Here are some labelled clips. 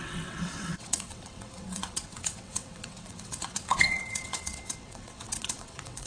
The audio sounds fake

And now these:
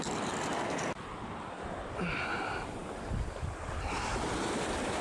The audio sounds real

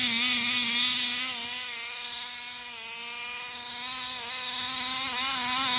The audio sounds real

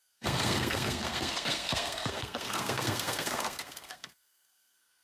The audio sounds fake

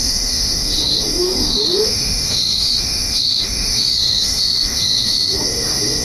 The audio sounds fake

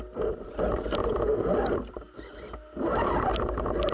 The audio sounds real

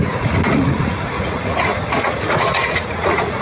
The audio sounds fake